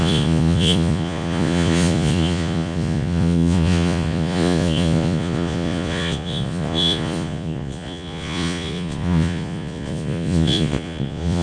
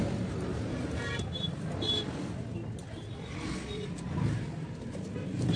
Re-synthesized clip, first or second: first